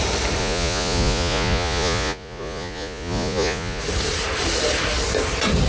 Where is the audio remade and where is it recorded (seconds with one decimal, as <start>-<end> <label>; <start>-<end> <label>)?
0.0-0.4 recorded; 0.4-3.8 remade; 3.8-5.7 recorded